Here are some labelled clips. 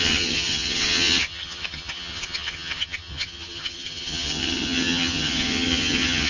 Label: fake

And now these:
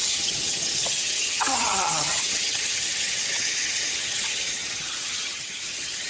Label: fake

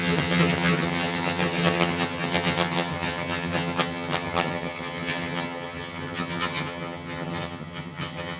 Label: fake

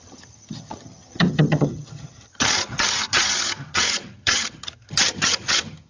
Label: fake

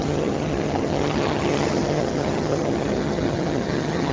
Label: fake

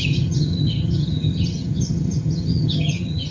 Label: fake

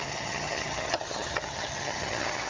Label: fake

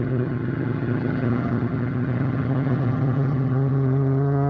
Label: fake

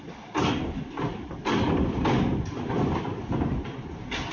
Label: real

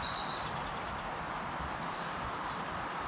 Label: real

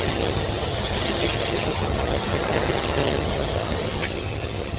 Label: fake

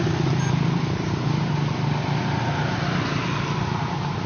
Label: real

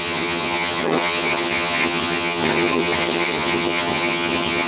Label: fake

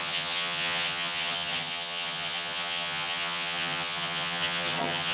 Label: fake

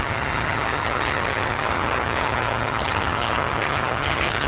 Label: fake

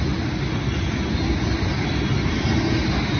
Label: real